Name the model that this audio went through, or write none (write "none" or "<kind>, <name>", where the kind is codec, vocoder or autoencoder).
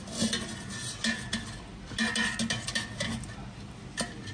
none